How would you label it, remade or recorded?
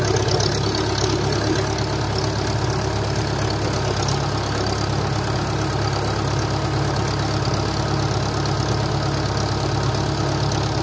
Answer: recorded